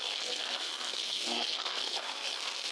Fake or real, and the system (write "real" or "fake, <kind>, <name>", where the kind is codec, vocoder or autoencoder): fake, codec, SNAC